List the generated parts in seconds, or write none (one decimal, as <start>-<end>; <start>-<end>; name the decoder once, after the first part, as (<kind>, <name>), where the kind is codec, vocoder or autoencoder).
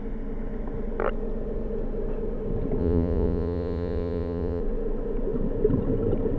2.8-4.6 (vocoder, Vocos)